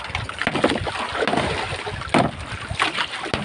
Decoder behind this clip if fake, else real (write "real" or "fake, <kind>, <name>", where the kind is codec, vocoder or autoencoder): real